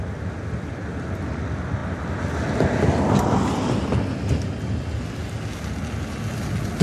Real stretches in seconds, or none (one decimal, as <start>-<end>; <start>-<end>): 0.0-6.8